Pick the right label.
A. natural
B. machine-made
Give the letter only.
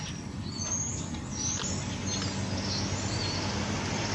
A